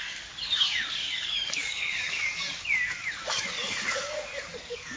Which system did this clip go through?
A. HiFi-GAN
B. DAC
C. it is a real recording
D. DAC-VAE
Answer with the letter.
B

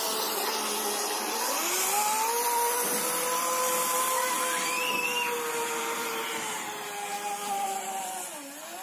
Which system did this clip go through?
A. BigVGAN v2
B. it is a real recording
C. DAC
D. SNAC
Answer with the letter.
B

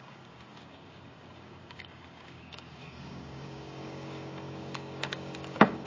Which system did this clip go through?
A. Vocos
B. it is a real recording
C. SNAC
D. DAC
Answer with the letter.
D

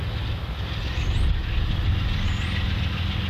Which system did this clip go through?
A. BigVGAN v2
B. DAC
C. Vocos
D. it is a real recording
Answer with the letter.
D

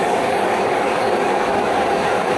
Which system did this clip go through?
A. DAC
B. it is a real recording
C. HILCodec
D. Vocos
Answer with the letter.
A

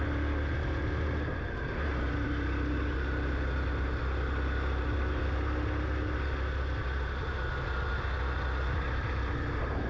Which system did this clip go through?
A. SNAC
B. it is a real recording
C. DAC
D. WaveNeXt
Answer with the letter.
B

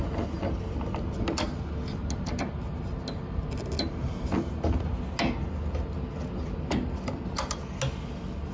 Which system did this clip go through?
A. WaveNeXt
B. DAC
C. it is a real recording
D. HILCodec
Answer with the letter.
C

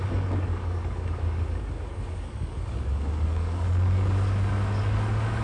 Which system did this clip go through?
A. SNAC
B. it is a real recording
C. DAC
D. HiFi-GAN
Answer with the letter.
C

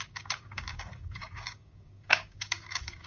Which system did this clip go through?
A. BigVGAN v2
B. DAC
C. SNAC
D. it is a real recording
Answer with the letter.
B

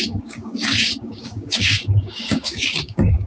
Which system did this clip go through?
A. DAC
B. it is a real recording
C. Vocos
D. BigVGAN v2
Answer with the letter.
A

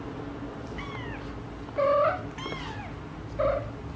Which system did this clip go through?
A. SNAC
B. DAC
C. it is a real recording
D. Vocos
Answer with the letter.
C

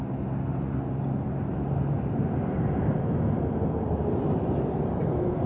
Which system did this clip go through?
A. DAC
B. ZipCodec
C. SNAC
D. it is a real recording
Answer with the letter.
D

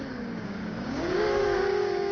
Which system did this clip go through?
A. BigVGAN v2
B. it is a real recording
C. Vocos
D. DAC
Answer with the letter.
D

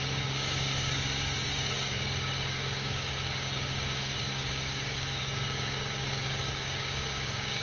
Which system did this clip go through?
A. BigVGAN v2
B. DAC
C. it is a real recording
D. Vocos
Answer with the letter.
B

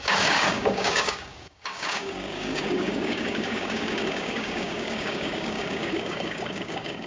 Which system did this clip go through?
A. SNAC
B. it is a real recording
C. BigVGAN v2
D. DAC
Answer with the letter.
D